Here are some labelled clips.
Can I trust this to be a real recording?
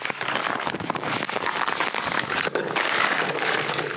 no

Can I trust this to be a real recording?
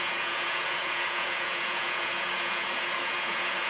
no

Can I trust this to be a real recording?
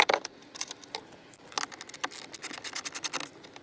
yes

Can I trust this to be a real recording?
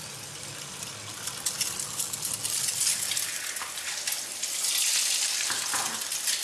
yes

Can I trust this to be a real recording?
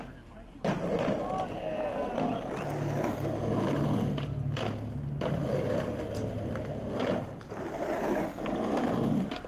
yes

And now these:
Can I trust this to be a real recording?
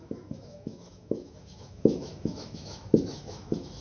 no